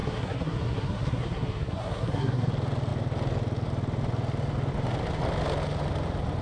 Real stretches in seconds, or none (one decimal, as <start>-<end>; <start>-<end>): 2.5-6.4